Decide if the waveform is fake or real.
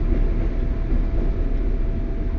real